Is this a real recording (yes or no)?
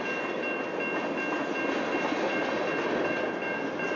yes